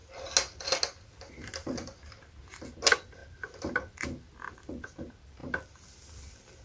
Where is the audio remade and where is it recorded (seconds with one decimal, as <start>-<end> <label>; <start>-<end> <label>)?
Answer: 0.0-6.6 recorded